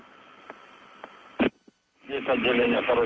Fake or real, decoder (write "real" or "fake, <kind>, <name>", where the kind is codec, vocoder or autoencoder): real